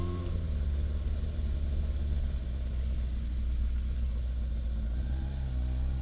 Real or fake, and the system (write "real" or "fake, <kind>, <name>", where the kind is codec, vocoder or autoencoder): real